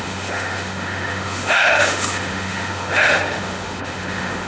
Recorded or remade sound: remade